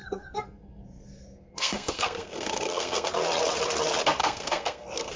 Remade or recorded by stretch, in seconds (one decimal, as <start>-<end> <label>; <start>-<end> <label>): 0.0-3.1 remade; 3.1-4.2 recorded; 4.2-5.2 remade